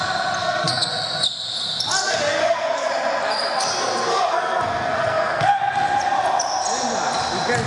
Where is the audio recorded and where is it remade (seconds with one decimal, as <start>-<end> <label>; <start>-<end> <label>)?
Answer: 0.0-0.4 recorded; 0.4-0.9 remade; 0.9-2.4 recorded; 2.4-2.9 remade; 2.9-4.1 recorded; 4.1-5.6 remade; 5.6-7.7 recorded